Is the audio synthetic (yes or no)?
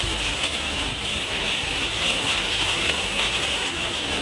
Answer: yes